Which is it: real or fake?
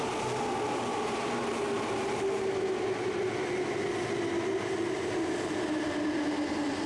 real